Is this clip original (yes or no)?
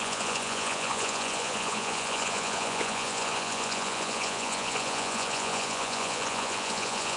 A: no